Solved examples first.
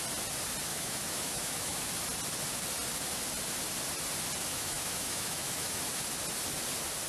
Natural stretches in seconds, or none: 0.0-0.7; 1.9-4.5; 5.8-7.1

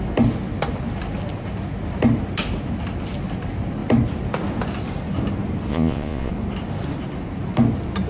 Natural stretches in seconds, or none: 0.0-5.7; 6.3-8.1